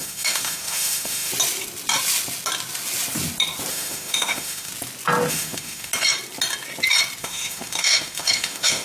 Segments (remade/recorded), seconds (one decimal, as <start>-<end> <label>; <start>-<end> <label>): 0.0-1.3 remade; 1.3-3.7 recorded; 3.7-4.7 remade; 4.7-5.3 recorded; 5.3-5.9 remade; 5.9-7.2 recorded; 7.2-8.8 remade